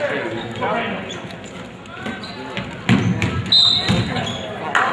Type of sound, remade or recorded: recorded